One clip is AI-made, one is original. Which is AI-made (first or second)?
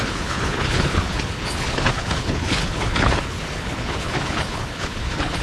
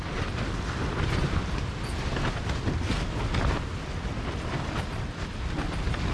first